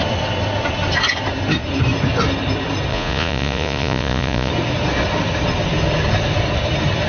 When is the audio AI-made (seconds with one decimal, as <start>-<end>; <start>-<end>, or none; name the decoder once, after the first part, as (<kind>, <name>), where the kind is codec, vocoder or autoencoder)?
2.9-4.5 (vocoder, Vocos)